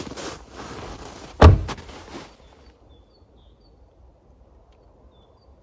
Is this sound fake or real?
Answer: real